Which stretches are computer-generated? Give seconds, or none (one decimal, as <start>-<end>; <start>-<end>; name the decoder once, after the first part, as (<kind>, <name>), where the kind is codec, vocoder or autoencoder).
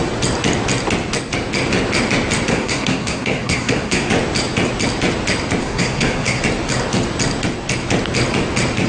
2.5-4.1 (codec, SNAC); 5.6-6.4